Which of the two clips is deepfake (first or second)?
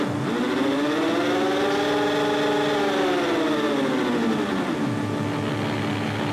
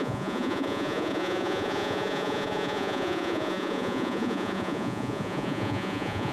second